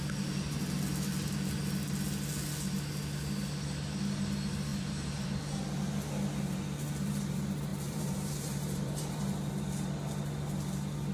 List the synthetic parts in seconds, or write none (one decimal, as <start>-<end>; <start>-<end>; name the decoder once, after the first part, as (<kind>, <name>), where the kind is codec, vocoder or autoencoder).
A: 4.7-5.6 (vocoder, BigVGAN v2); 7.7-9.5